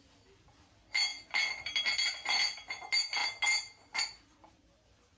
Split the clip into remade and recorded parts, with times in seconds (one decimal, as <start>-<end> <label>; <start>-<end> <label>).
0.0-5.2 recorded